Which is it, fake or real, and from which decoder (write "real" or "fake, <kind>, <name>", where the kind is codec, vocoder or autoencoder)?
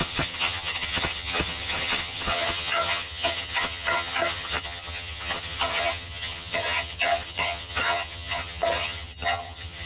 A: fake, vocoder, HiFi-GAN